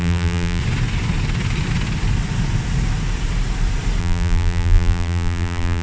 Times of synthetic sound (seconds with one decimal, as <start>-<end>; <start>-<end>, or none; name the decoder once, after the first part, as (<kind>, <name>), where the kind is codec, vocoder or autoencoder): 0.0-0.6 (vocoder, BigVGAN v2); 4.0-5.8